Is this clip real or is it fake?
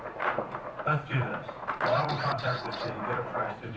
fake